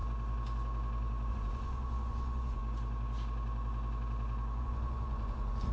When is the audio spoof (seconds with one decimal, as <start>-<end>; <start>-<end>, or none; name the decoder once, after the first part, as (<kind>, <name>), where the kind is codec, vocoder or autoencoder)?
1.3-2.6 (vocoder, Vocos); 4.6-5.7